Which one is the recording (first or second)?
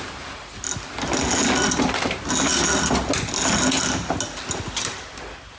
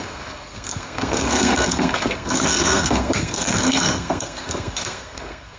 first